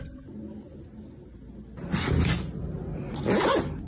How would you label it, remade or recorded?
recorded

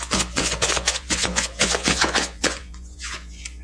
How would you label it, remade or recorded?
remade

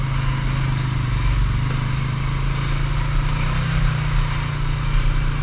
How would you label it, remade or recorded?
recorded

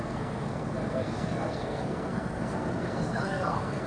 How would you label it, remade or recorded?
remade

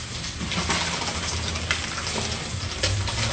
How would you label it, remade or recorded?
recorded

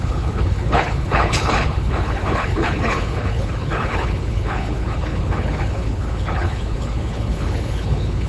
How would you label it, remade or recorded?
remade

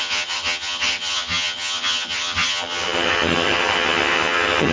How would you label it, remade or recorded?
remade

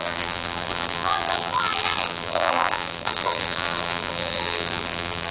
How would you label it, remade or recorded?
remade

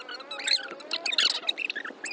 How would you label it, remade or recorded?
recorded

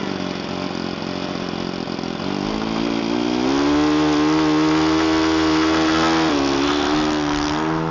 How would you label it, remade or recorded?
recorded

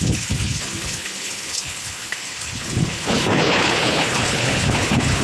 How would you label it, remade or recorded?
remade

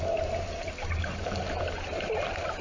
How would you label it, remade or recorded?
recorded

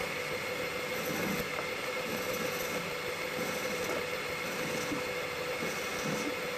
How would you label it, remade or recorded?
recorded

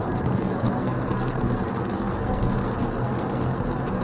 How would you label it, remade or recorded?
remade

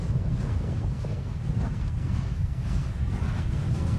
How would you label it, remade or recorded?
remade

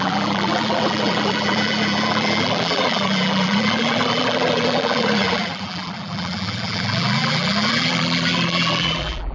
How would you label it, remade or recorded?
remade